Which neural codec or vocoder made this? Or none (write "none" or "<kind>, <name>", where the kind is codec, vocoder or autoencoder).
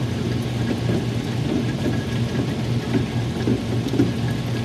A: none